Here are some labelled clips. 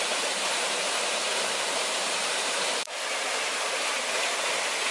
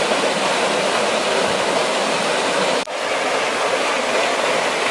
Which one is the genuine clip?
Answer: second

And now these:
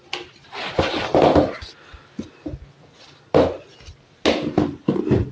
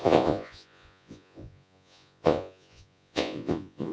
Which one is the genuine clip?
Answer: first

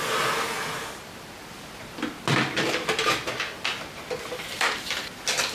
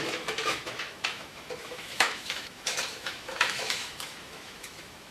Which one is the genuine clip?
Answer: first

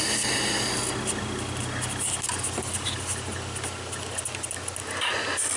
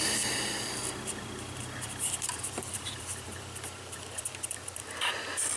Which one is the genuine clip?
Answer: first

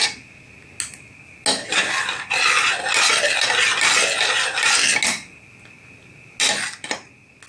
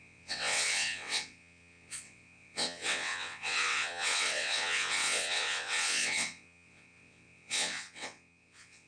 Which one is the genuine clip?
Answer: first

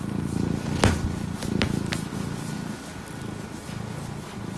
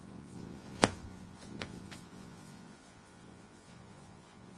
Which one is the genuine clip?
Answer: first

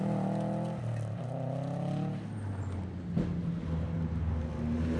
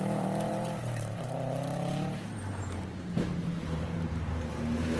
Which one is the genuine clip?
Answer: first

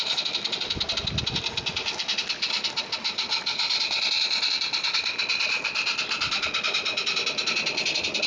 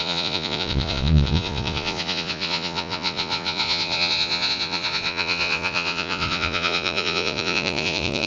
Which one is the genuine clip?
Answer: first